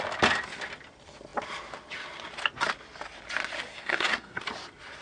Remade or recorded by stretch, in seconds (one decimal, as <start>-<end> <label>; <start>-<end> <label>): 0.0-3.7 recorded; 3.7-4.4 remade; 4.4-5.0 recorded